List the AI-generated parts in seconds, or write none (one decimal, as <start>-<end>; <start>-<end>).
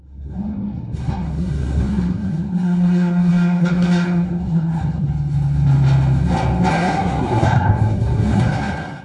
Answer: 0.0-5.1; 6.7-9.0